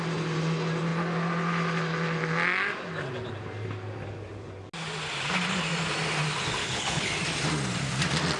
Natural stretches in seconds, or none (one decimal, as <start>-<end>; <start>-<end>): 0.0-6.6; 7.1-8.4